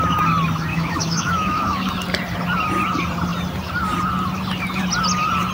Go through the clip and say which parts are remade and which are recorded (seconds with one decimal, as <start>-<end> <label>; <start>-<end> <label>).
0.0-0.7 recorded; 0.7-1.9 remade; 1.9-5.5 recorded